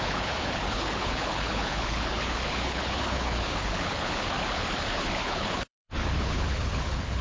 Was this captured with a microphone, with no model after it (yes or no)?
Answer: no